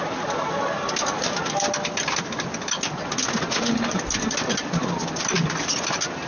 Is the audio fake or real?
real